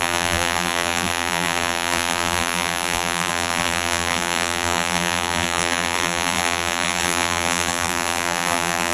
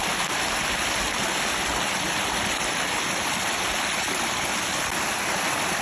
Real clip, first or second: second